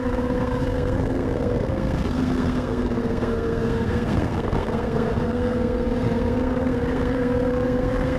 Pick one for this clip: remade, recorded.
remade